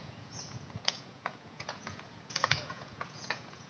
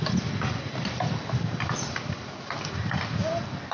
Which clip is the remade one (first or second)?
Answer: first